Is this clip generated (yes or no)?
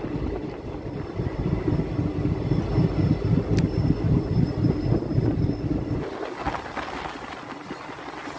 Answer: no